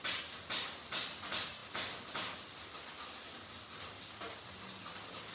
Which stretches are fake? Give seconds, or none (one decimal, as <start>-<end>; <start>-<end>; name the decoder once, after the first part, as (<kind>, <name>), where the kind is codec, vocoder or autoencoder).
none